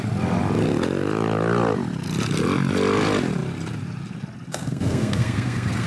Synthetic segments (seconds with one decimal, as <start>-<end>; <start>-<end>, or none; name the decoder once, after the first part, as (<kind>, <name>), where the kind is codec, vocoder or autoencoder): 4.5-5.9 (codec, SNAC)